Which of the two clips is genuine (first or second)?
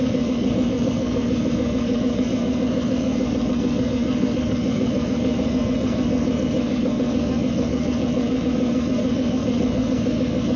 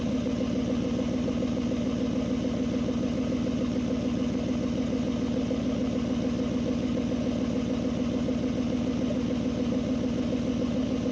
second